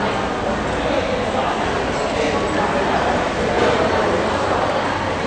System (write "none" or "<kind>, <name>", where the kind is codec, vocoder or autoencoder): none